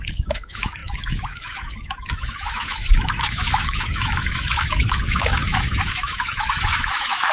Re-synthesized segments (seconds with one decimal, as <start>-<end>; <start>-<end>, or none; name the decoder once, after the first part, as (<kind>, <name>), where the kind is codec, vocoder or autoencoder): 0.0-7.3 (autoencoder, DAC-VAE)